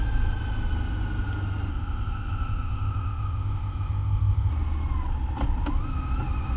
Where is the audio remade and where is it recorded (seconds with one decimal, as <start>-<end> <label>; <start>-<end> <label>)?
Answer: 0.0-1.7 recorded; 1.7-4.5 remade; 4.5-6.6 recorded